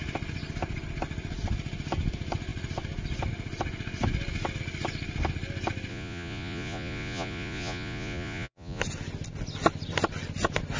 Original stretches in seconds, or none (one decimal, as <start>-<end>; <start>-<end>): 0.0-5.9; 8.8-10.8